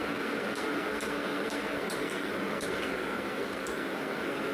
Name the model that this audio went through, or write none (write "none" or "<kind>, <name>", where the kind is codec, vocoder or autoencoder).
codec, SNAC